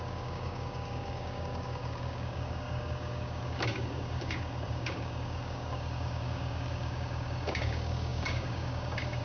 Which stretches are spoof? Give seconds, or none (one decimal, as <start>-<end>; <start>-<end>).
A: 0.0-9.2